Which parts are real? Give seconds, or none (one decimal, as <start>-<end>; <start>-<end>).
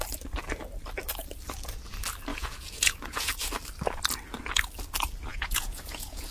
0.0-2.3; 3.3-5.3